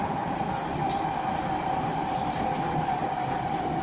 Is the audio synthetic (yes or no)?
no